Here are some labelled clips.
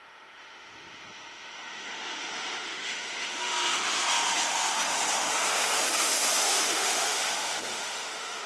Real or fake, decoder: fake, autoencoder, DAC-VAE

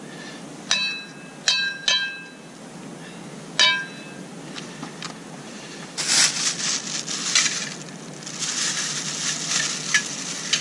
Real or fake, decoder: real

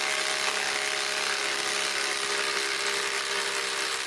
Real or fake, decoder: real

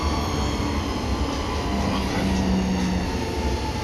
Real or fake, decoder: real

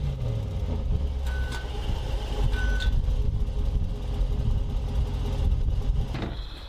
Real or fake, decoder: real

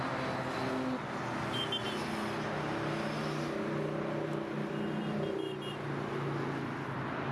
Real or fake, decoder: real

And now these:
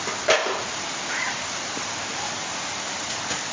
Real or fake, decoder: real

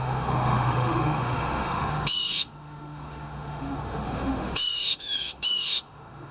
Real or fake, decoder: fake, autoencoder, DAC-VAE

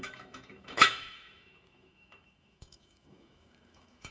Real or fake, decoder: fake, autoencoder, DAC-VAE